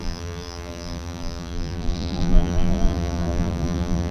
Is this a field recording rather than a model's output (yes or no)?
no